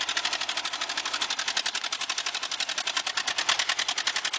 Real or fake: real